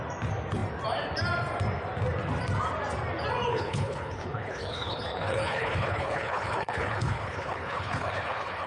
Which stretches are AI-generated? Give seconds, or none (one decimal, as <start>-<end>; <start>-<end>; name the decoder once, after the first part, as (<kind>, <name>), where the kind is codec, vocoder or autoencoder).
3.5-8.7 (codec, HILCodec)

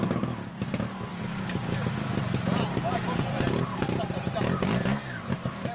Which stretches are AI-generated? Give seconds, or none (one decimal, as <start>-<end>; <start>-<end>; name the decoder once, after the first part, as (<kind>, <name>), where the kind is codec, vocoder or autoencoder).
none

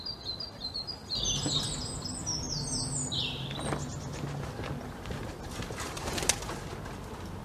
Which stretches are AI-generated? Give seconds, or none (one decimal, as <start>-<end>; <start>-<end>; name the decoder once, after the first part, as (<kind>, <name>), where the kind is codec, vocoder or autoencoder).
1.0-1.8 (vocoder, BigVGAN v2); 2.2-2.7